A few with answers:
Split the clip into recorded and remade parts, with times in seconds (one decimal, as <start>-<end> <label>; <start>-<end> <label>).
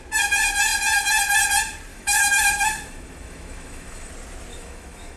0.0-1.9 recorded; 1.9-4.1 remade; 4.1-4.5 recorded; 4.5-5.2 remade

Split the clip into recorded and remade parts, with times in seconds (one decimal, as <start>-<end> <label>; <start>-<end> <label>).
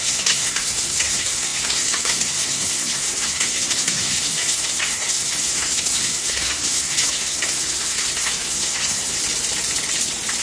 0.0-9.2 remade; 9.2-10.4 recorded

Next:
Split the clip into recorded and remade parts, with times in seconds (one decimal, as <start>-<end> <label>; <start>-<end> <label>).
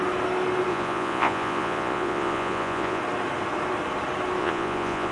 0.0-0.7 recorded; 0.7-3.0 remade; 3.0-4.4 recorded; 4.4-5.1 remade